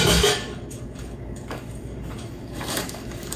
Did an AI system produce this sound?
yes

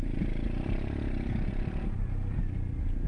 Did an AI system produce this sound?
no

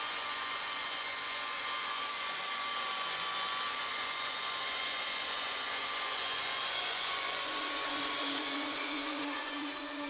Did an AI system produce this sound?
yes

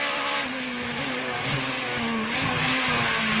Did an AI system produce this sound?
no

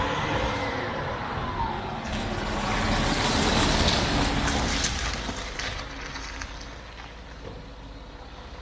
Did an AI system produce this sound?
no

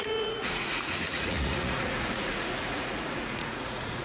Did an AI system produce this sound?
yes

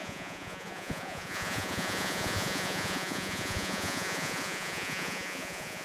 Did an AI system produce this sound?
yes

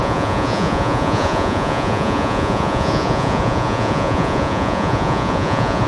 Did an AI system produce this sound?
yes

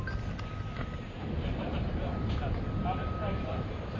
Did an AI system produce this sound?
no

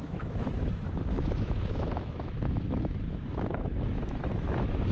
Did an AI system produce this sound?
yes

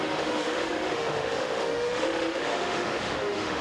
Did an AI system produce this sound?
yes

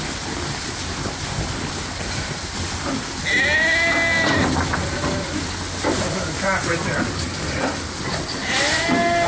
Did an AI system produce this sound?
no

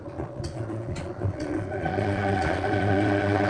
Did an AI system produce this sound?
yes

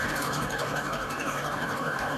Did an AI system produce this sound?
yes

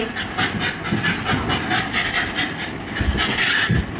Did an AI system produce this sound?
no